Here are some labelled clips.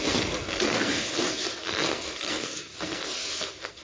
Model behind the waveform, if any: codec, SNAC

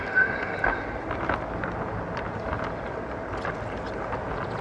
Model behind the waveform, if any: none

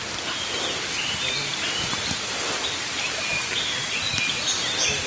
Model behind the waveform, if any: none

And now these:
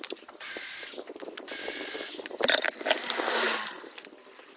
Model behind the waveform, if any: none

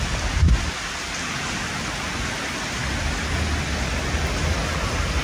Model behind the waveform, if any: none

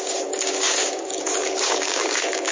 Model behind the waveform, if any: codec, DAC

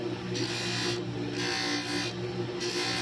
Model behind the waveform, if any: none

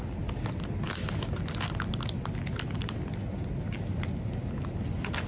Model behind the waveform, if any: none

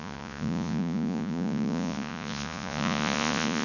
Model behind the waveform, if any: vocoder, Vocos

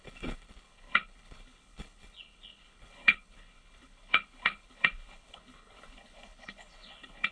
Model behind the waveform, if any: codec, HILCodec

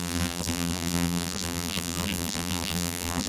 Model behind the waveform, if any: vocoder, BigVGAN v2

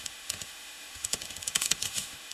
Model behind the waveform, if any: autoencoder, DAC-VAE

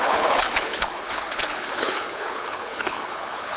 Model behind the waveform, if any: codec, HILCodec